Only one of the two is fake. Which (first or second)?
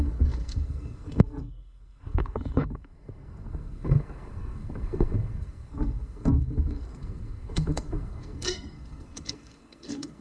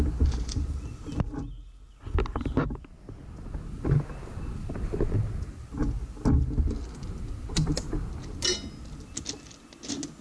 first